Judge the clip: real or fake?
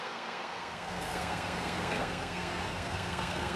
fake